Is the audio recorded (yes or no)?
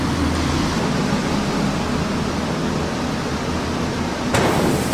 yes